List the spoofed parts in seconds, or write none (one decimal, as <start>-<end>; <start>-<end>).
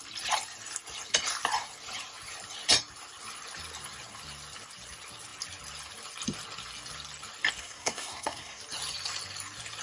7.6-8.6